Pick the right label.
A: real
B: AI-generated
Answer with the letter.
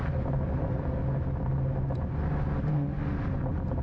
A